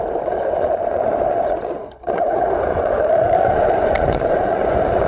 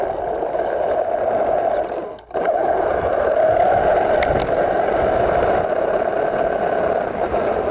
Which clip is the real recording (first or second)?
second